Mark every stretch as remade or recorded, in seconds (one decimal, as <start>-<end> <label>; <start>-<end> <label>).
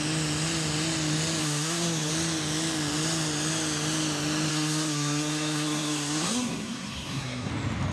0.0-1.4 recorded; 1.4-2.1 remade; 2.1-4.5 recorded; 4.5-7.5 remade; 7.5-7.9 recorded